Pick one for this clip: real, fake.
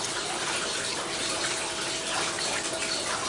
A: real